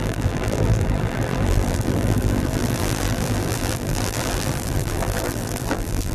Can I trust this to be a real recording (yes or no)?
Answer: no